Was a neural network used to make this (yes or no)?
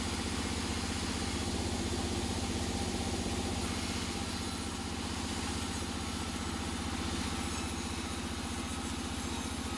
no